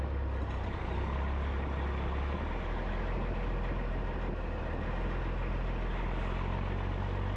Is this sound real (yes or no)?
yes